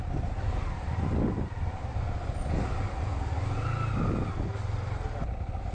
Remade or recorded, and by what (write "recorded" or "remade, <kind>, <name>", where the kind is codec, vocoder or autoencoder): recorded